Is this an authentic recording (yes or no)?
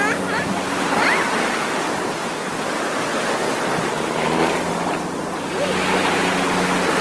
yes